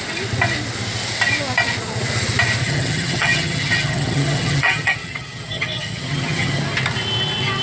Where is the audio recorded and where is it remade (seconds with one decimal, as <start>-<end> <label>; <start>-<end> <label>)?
0.0-2.6 recorded; 2.6-6.6 remade; 6.6-7.6 recorded